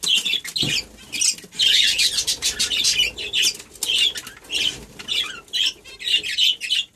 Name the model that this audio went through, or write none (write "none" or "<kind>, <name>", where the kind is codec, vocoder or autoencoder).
none